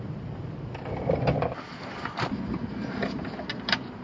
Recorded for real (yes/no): yes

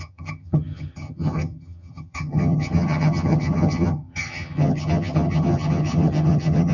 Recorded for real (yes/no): no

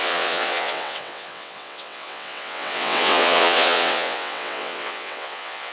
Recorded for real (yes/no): no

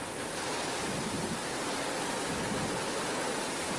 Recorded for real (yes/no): yes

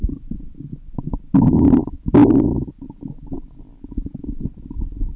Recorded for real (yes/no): yes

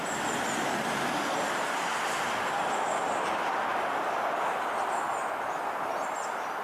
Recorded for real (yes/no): yes